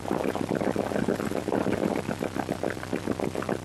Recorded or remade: remade